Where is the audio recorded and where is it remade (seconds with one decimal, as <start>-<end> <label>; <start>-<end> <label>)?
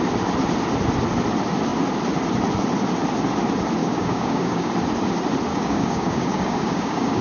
0.0-3.8 recorded; 3.8-4.7 remade; 4.7-5.5 recorded; 5.5-7.2 remade